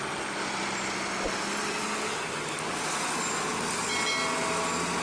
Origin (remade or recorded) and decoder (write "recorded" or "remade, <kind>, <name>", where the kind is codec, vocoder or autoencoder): recorded